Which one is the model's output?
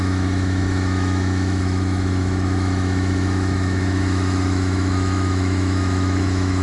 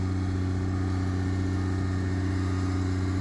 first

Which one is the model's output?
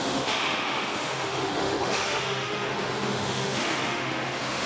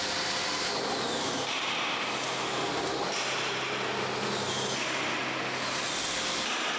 first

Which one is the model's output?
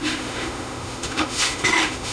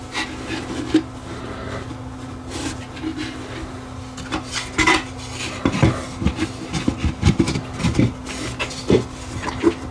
first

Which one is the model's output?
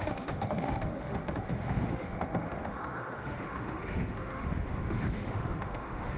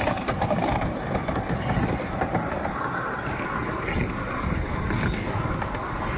first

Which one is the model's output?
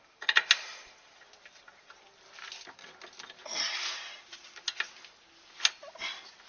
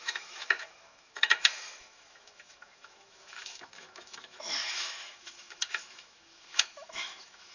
second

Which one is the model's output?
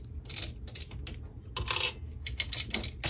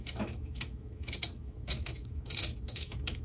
second